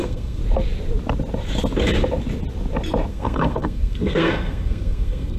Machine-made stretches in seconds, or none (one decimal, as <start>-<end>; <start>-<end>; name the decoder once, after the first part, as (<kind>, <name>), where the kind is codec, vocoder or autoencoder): 0.0-0.4 (codec, SNAC); 3.1-5.4